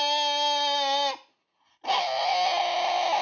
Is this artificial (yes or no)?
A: no